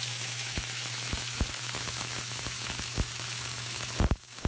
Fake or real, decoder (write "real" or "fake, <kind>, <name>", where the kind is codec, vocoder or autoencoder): fake, autoencoder, DAC-VAE